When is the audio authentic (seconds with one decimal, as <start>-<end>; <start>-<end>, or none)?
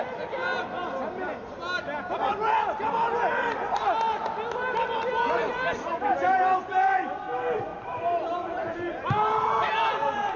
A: 0.0-7.7; 9.7-10.4